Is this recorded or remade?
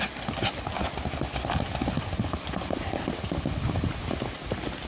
recorded